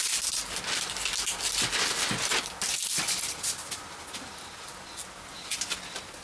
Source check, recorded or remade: recorded